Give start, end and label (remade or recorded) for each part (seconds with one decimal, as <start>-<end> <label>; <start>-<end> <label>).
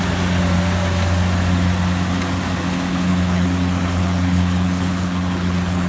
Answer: 0.0-3.1 recorded; 3.1-5.9 remade